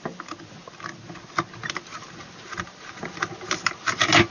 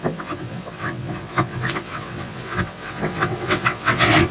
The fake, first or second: second